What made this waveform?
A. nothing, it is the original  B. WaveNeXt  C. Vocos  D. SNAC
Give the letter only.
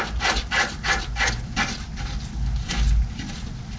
A